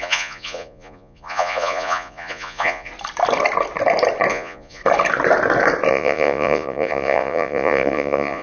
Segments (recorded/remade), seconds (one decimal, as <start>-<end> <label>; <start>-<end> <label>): 0.0-2.9 remade; 2.9-4.3 recorded; 4.3-4.8 remade; 4.8-5.9 recorded; 5.9-8.4 remade